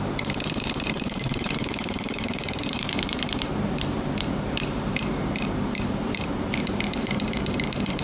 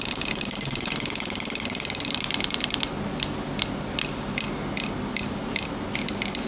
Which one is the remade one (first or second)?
first